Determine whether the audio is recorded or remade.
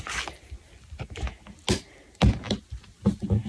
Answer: recorded